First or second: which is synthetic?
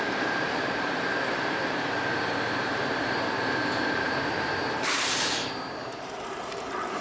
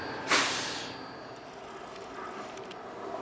first